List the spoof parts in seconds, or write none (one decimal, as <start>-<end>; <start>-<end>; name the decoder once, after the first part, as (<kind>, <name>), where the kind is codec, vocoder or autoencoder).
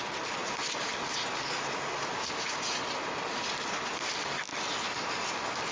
none